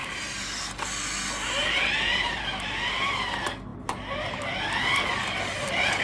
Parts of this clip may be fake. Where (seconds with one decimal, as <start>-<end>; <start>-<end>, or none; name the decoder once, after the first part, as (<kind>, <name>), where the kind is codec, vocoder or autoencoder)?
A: 0.0-0.6 (vocoder, BigVGAN v2); 1.6-2.4